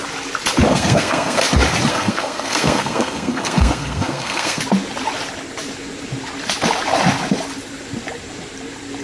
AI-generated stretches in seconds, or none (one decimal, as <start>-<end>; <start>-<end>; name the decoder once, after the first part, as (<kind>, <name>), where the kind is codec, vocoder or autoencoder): 0.7-1.4 (codec, SNAC); 1.9-4.6